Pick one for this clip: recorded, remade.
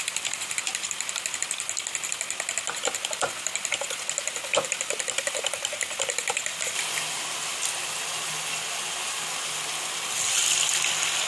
recorded